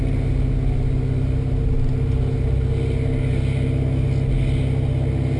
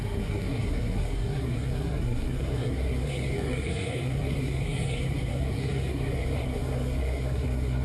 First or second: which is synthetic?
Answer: second